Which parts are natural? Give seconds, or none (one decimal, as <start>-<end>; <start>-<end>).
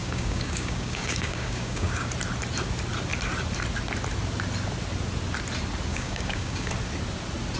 2.1-5.9; 6.7-7.6